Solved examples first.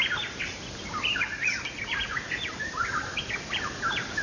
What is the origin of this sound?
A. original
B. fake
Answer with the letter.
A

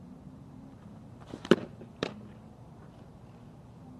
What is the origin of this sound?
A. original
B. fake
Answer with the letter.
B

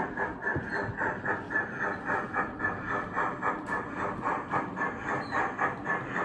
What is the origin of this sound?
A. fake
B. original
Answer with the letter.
B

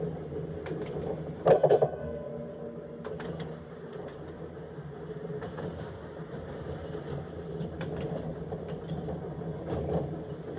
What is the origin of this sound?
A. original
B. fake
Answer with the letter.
A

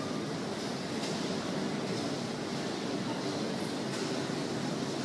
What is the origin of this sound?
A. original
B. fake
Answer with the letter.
A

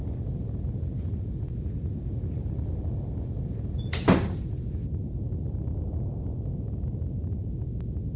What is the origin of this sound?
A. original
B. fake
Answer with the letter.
A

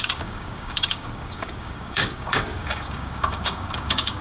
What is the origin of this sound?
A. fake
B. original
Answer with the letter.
A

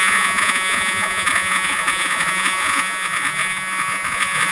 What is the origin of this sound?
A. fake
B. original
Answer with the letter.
A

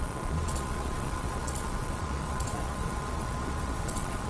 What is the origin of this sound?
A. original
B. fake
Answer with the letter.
B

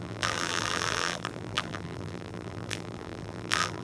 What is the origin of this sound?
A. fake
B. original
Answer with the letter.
A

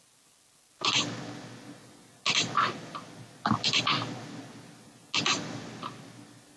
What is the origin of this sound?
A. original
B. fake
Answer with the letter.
A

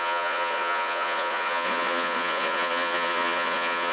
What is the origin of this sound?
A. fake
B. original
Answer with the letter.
A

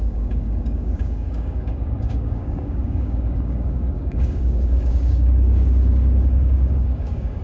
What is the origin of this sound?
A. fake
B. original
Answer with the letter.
A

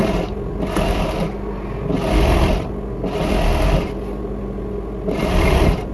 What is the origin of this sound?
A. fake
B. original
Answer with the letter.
B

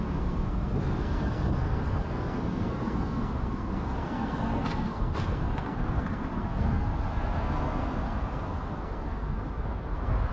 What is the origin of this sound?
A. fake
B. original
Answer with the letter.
A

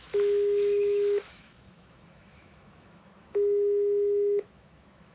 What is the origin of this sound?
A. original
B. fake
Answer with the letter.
B